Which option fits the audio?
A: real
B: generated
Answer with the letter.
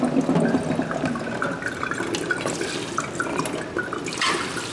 A